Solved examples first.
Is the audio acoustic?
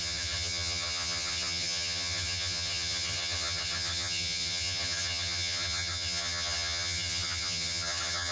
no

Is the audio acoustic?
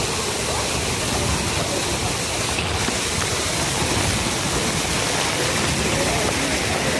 yes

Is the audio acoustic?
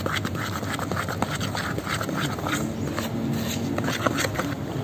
yes